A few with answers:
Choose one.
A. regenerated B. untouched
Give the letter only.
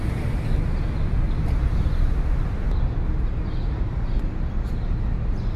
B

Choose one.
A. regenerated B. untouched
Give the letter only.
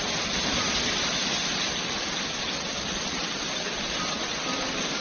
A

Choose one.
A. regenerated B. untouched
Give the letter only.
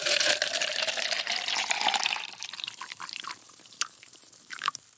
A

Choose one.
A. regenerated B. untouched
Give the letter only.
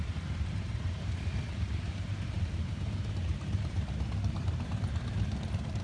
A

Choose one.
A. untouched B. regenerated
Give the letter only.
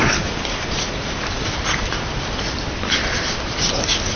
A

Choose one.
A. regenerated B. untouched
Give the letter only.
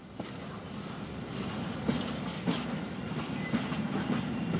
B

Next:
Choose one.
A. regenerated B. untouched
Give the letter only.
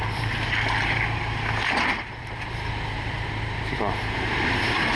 A